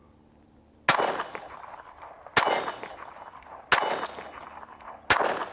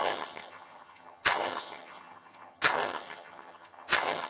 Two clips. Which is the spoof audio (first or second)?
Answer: second